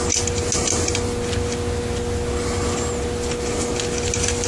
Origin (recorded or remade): recorded